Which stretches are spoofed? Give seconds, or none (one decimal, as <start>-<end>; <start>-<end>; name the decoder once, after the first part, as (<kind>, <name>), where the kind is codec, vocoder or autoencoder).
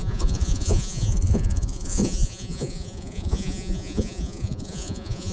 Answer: 0.0-5.3 (vocoder, Vocos)